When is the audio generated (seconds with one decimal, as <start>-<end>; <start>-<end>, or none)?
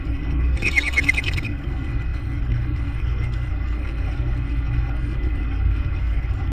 0.0-6.5